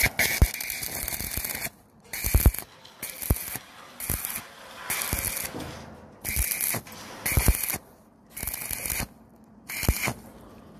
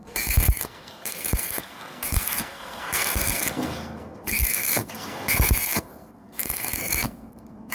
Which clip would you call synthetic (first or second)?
second